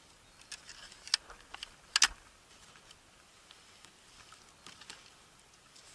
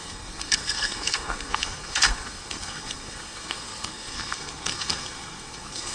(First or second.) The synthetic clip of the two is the second